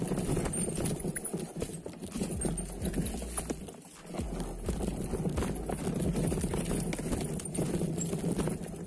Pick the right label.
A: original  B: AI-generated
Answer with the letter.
A